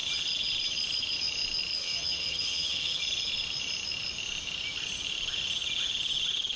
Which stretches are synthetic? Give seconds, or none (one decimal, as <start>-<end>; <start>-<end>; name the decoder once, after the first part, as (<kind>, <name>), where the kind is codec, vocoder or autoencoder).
1.8-3.0 (vocoder, HiFi-GAN)